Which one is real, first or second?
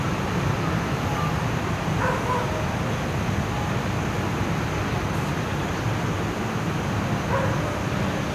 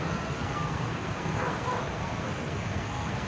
first